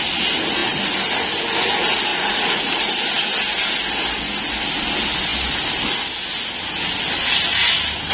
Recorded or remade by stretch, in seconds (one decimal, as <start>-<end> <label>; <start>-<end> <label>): 0.0-2.1 recorded; 2.1-2.9 remade; 2.9-8.1 recorded